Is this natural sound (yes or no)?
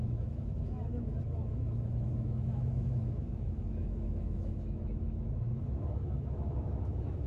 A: no